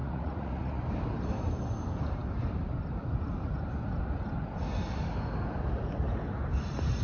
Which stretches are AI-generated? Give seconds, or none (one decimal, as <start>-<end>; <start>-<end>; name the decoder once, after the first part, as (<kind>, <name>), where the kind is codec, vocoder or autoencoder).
0.0-0.8 (vocoder, Vocos)